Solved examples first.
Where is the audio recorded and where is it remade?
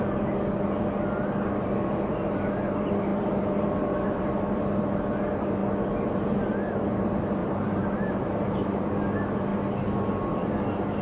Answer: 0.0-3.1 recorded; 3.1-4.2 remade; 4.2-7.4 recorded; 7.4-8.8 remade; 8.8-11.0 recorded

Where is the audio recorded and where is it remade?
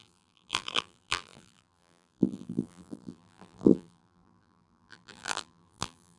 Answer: 0.0-6.2 remade